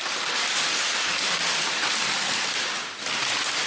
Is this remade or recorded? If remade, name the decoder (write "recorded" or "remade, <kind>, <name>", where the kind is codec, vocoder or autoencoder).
recorded